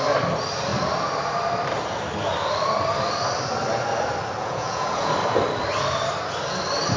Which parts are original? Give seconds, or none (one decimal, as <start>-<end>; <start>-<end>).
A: 0.0-4.4; 5.1-7.0